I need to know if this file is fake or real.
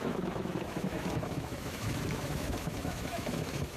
fake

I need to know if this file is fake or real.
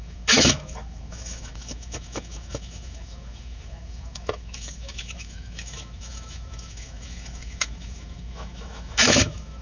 fake